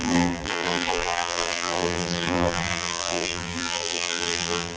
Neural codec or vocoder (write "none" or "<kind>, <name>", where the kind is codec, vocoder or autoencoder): vocoder, BigVGAN v2